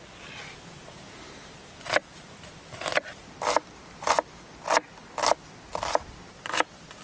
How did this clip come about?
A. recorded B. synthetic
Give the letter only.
A